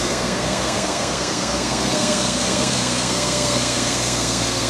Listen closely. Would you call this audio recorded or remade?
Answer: remade